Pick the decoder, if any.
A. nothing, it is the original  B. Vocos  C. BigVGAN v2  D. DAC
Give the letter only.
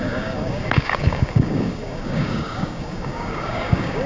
D